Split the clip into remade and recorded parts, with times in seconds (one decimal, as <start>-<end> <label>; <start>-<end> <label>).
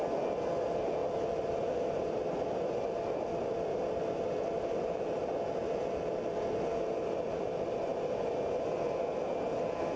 0.0-10.0 recorded